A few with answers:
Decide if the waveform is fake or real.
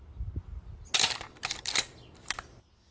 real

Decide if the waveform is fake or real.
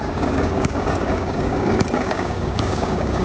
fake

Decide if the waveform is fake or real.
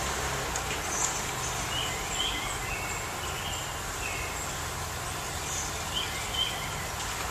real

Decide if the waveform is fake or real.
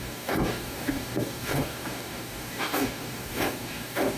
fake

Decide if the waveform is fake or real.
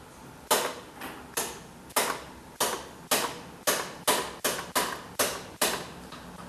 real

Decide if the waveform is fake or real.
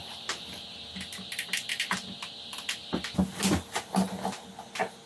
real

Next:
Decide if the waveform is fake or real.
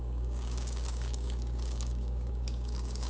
fake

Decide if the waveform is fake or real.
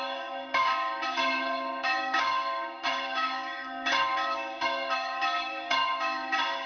fake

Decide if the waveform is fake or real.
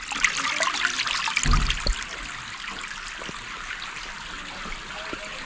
real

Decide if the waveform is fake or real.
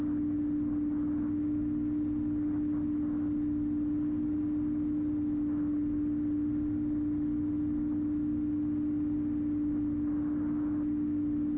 real